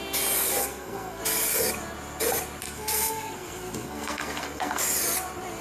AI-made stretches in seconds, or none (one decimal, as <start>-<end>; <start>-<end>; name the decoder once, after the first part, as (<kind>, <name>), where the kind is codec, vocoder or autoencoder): 0.6-1.2 (codec, SNAC); 2.6-4.8